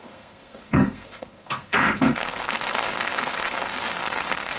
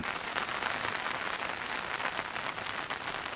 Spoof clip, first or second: first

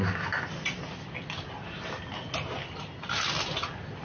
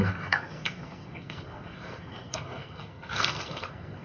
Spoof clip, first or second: second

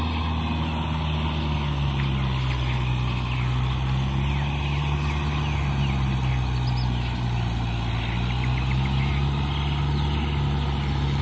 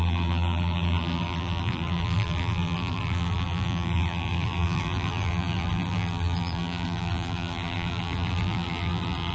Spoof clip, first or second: second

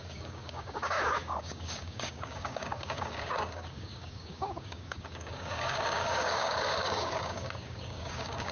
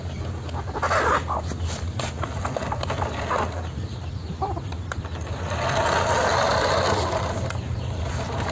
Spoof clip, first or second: first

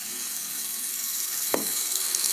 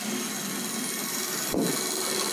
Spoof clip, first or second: first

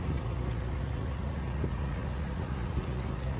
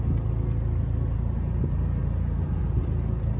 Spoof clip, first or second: first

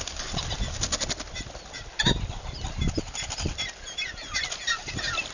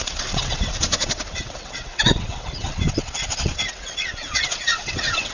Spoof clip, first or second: second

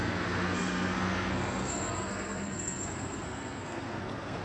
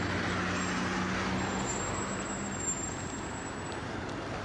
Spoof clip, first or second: first